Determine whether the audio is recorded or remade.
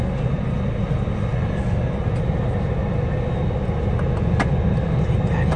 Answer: recorded